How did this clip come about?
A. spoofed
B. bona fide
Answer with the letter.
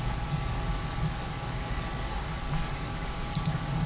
A